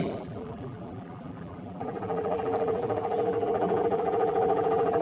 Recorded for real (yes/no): no